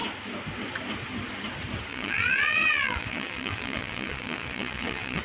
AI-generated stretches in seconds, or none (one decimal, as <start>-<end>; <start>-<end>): 1.9-5.2